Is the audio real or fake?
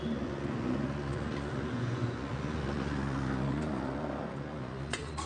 fake